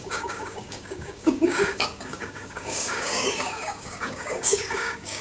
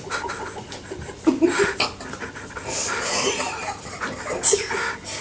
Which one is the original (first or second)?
second